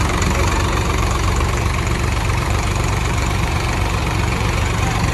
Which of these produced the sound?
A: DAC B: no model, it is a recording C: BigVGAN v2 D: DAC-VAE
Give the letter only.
C